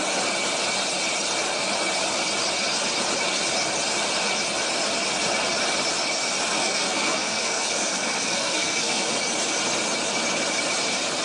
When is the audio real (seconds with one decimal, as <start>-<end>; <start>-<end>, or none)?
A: 0.0-6.6; 9.1-11.2